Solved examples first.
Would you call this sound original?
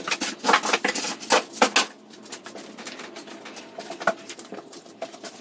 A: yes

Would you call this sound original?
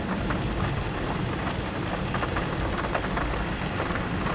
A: yes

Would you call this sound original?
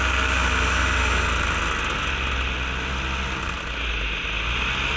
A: yes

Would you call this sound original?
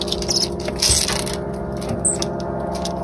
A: yes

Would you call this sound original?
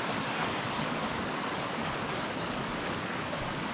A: no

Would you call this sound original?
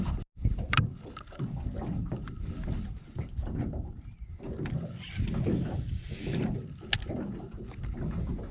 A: yes